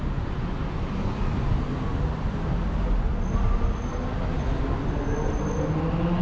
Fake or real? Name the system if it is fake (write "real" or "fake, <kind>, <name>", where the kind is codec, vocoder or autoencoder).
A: real